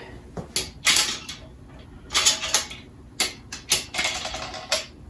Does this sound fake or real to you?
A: real